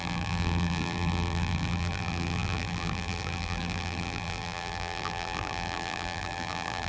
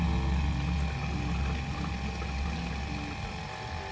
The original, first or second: second